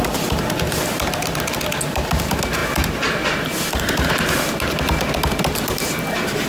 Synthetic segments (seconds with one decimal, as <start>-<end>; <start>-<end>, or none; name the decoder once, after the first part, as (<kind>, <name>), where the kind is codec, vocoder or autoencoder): none